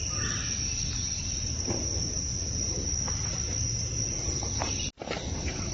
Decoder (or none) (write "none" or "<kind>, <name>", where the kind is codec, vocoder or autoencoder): none